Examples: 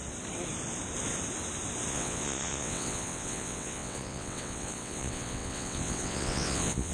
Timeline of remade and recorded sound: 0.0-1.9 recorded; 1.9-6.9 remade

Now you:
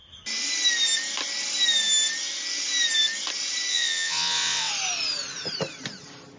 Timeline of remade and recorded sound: 0.0-3.7 recorded; 3.7-4.7 remade; 4.7-6.4 recorded

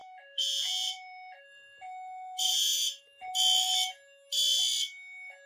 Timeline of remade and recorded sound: 0.0-3.3 remade; 3.3-5.5 recorded